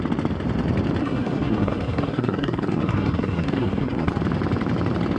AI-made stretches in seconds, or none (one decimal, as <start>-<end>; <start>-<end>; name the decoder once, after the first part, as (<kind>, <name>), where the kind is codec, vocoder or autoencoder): 1.0-4.1 (codec, SNAC)